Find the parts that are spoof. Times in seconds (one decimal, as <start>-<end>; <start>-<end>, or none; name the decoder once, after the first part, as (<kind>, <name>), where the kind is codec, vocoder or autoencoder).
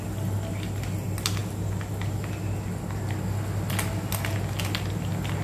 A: none